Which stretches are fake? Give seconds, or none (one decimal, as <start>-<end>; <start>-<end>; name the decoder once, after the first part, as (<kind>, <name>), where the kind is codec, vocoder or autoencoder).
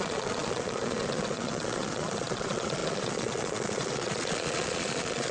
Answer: 0.0-5.3 (vocoder, Vocos)